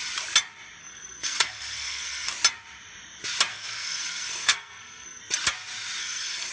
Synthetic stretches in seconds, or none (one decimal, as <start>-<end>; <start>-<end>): 0.8-2.3; 3.5-5.2; 6.0-6.5